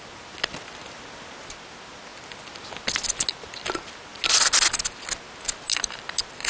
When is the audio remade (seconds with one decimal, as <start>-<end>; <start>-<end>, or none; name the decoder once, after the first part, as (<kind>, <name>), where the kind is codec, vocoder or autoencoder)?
none